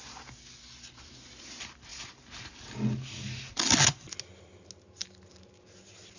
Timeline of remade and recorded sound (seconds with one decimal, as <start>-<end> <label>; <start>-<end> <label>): 0.0-6.2 recorded